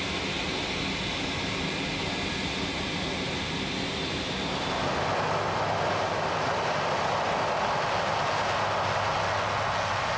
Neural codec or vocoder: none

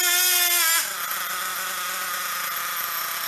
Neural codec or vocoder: none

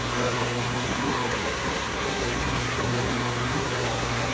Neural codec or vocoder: codec, SNAC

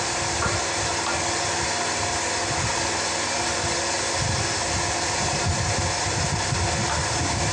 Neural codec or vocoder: none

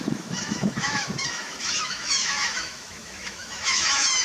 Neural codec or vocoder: autoencoder, DAC-VAE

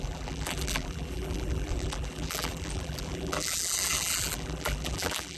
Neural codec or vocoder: vocoder, BigVGAN v2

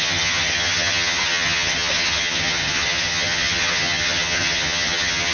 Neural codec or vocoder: vocoder, HiFi-GAN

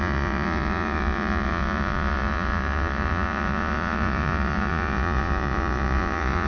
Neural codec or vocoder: vocoder, Vocos